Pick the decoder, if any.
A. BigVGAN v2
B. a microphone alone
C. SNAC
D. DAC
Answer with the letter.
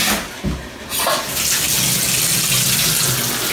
B